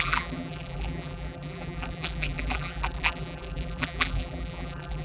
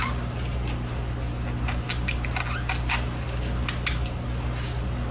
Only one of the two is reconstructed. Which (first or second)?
first